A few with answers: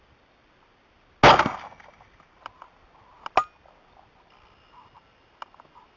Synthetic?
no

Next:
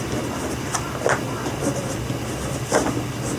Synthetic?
no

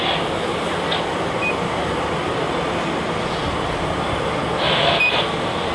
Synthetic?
no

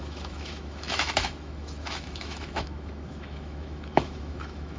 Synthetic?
yes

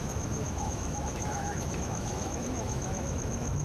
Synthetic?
yes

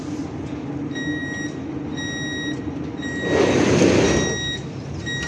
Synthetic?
no